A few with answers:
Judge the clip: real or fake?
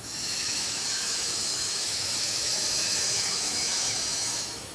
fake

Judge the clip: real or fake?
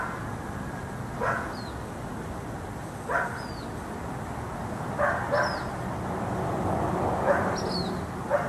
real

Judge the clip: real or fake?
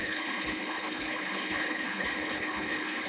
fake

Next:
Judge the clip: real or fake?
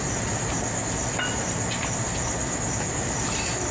real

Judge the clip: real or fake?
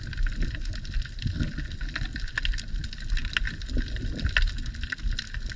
real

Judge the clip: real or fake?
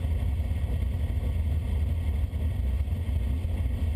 fake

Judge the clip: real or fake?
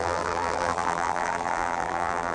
fake